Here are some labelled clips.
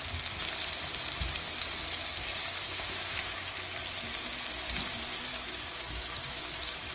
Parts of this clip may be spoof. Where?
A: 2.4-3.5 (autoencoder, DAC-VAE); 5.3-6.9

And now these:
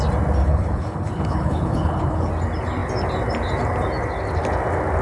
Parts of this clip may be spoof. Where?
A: 0.4-2.3 (codec, HILCodec)

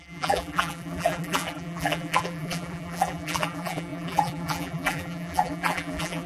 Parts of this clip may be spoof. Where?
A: 0.0-6.3 (vocoder, BigVGAN v2)